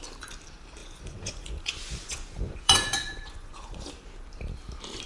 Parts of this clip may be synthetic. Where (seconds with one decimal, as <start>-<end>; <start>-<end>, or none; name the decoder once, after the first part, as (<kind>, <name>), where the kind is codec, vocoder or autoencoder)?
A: 0.8-3.9 (vocoder, Vocos)